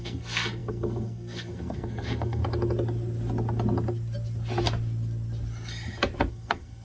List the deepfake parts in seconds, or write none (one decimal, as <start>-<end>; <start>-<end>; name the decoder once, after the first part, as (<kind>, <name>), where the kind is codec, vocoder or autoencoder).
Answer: 0.0-2.4 (codec, SNAC); 6.3-6.8